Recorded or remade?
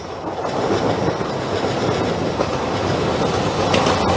recorded